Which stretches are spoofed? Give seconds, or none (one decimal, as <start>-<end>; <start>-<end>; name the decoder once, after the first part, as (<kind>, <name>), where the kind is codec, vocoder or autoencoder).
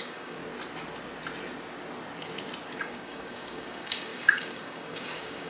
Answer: 0.0-0.4 (codec, DAC); 2.8-5.5